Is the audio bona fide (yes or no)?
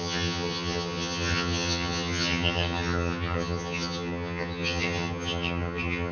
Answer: no